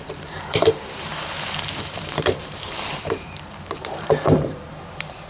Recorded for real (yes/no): no